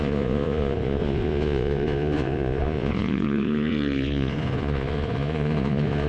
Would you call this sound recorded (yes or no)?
no